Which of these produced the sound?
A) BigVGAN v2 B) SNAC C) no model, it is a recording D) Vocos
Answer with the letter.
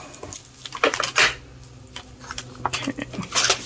C